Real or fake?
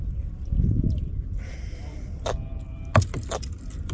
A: real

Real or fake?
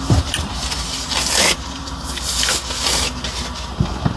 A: fake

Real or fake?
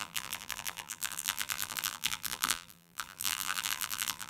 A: fake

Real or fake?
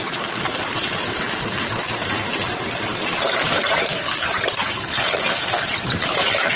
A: fake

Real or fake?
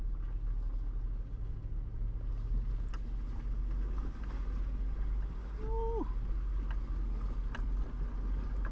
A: real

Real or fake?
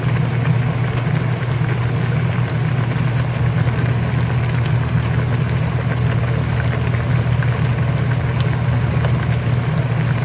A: real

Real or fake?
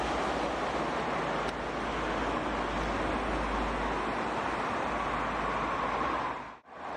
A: real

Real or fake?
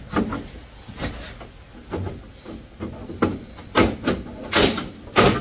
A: real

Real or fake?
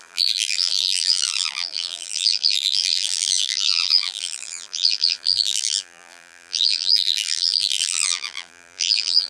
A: fake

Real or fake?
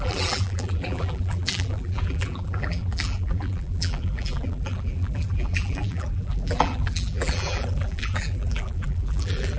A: fake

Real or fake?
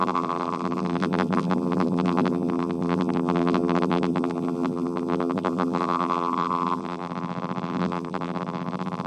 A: fake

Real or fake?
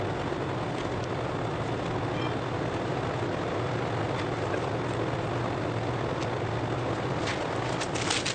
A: real